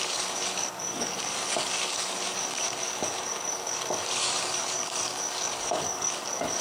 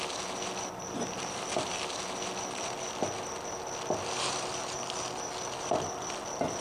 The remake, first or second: first